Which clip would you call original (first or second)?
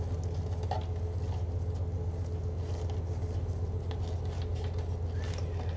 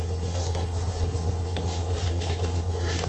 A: first